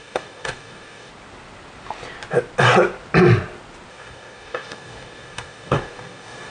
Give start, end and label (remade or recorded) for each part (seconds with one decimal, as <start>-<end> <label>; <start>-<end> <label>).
0.0-1.1 remade; 1.1-3.9 recorded; 3.9-6.5 remade